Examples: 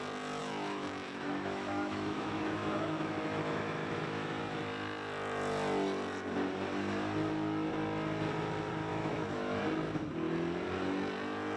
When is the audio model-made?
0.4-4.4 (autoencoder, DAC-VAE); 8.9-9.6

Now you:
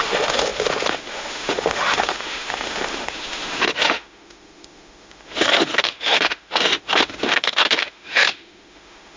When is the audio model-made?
0.0-9.2 (autoencoder, DAC-VAE)

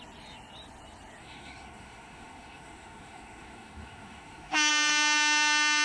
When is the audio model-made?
1.2-4.7 (autoencoder, DAC-VAE)

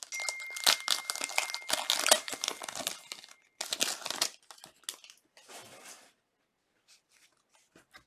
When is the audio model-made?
none

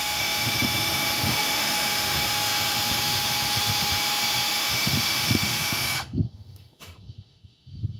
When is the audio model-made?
0.0-8.0 (autoencoder, DAC-VAE)

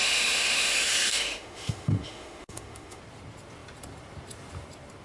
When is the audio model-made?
0.0-3.0 (autoencoder, DAC-VAE)